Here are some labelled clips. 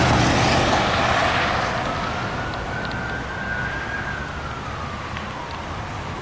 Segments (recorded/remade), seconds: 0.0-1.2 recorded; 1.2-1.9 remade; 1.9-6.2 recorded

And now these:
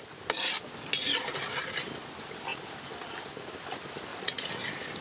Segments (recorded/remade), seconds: 0.0-4.1 recorded; 4.1-4.6 remade; 4.6-5.0 recorded